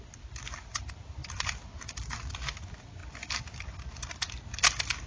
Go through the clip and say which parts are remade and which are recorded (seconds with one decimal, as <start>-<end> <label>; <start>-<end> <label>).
0.0-1.2 recorded; 1.2-2.6 remade; 2.6-5.1 recorded